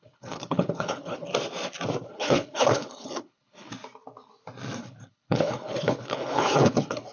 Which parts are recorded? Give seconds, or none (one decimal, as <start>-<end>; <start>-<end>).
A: 1.3-2.1; 3.7-4.8

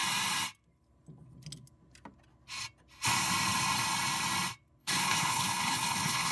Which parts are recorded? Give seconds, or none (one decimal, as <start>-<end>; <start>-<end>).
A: 0.0-4.8

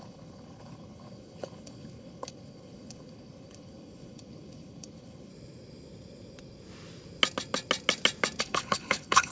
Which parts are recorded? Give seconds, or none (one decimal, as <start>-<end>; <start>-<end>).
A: 5.3-8.4